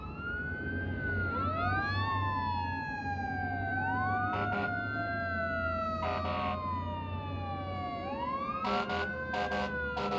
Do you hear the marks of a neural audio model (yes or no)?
no